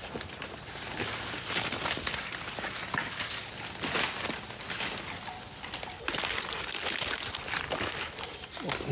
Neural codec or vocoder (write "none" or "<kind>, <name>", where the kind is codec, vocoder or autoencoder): none